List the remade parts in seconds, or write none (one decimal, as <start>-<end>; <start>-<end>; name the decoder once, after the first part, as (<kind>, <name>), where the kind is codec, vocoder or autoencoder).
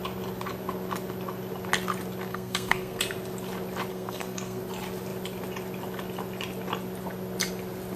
2.3-3.0 (codec, SNAC); 3.9-4.6